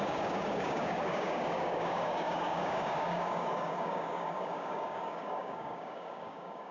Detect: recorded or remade remade